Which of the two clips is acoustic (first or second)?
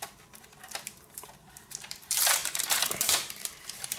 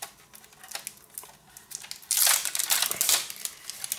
second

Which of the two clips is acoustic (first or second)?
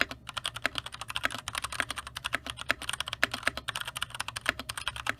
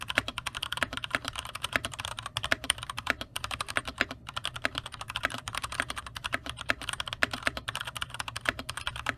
first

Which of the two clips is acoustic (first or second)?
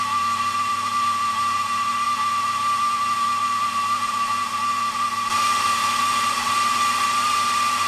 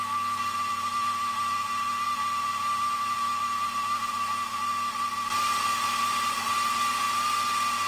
second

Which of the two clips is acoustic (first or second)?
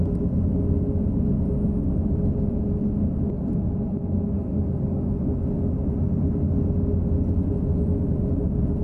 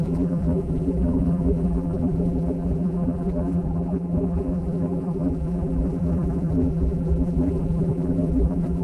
first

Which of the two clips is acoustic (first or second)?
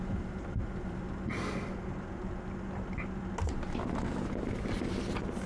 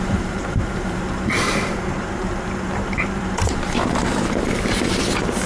first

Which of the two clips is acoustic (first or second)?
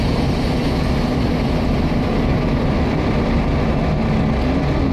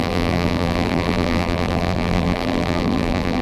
first